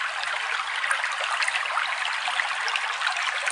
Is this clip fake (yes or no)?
no